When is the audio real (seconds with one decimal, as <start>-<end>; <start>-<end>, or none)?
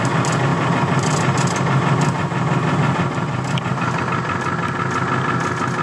0.0-5.8